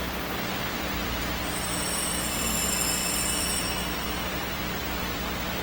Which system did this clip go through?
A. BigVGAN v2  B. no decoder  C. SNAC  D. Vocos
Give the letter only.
A